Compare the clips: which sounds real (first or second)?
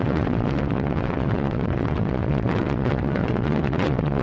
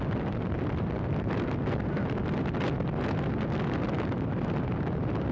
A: second